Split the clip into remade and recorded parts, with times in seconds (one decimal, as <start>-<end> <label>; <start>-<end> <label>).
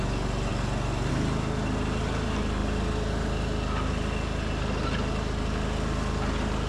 0.0-6.7 recorded